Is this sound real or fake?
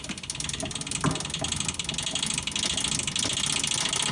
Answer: real